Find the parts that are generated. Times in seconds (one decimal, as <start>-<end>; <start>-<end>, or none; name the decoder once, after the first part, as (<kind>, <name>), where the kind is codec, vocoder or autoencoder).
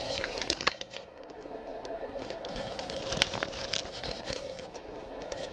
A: 0.0-3.0 (codec, SNAC); 3.9-5.5